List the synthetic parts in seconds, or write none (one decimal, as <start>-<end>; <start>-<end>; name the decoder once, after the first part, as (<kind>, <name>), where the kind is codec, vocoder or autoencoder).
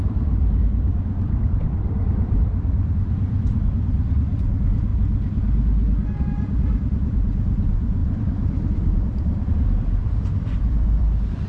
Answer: 0.0-4.9 (vocoder, BigVGAN v2); 6.2-11.5